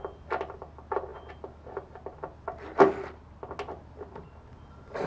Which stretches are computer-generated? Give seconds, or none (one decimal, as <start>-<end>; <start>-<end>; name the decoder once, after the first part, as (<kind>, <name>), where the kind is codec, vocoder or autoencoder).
none